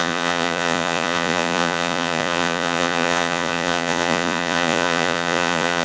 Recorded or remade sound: remade